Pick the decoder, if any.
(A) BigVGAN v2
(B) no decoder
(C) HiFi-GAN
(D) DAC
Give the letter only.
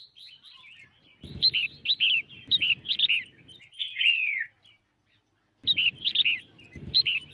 B